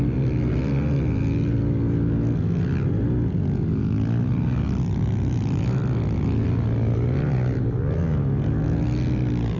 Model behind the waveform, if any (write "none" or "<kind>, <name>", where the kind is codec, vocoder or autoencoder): none